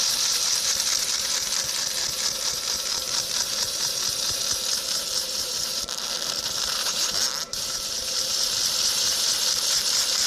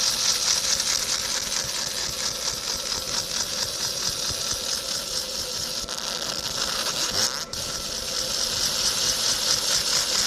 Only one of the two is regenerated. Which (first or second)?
first